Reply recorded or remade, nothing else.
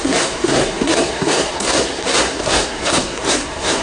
remade